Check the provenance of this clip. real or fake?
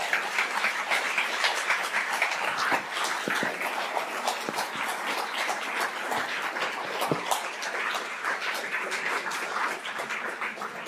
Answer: real